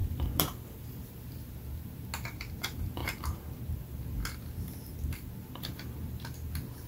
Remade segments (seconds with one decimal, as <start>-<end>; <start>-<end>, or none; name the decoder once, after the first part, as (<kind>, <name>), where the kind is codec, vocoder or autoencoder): 0.0-1.0 (vocoder, BigVGAN v2)